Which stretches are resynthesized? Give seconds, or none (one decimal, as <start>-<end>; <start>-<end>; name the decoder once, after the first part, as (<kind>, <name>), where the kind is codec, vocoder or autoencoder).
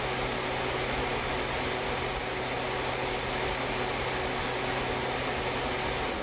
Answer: none